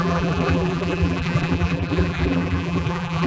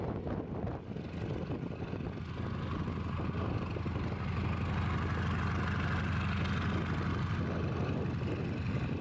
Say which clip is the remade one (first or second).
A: first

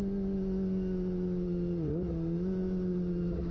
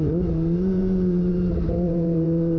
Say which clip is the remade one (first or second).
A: second